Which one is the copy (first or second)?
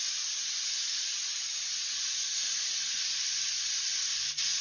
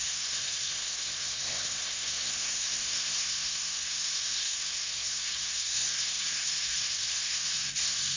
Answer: second